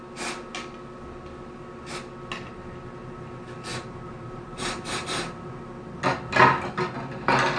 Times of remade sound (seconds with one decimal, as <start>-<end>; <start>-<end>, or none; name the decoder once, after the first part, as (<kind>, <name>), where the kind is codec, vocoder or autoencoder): 3.7-5.7 (vocoder, BigVGAN v2)